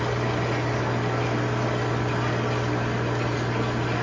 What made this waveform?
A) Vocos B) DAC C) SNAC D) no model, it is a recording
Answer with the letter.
D